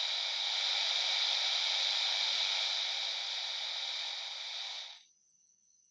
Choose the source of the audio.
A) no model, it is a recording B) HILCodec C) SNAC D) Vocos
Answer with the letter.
A